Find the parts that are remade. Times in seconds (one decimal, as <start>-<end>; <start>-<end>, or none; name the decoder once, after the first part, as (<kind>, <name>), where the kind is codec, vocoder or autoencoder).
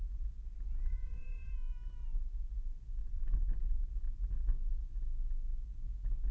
0.8-1.5 (vocoder, Vocos); 3.0-3.9